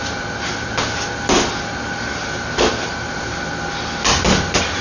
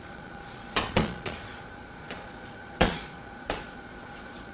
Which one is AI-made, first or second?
second